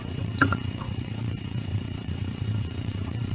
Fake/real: fake